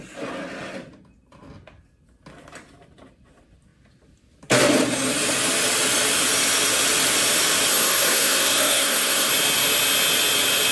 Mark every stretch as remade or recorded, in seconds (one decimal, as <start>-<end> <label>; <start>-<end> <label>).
0.0-7.7 recorded; 7.7-9.3 remade; 9.3-10.7 recorded